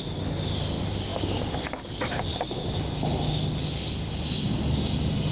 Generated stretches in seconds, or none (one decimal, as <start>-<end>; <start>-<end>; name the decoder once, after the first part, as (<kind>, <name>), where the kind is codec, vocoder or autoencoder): none